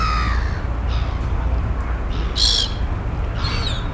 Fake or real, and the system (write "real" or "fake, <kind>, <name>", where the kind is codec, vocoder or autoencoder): real